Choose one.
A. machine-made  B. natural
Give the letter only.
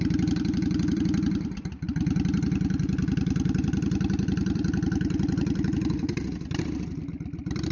A